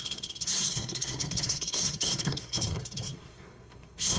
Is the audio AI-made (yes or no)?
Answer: yes